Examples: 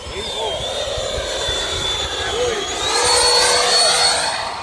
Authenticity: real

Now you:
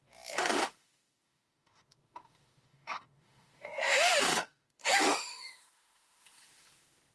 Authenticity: fake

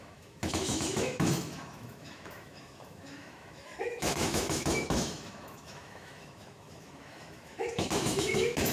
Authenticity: fake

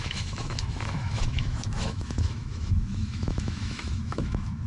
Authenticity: fake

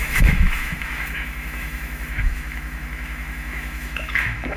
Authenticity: fake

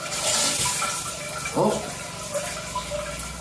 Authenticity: real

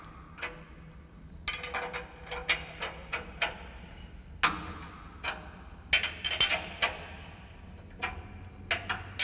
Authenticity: real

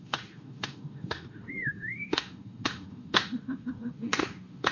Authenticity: fake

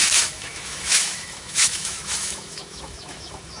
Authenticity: fake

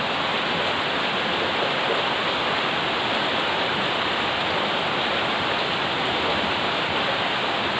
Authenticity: real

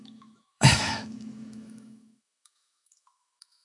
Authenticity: fake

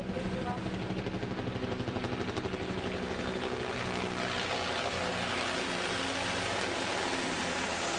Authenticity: real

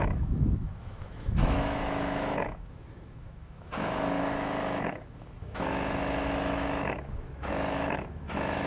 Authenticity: fake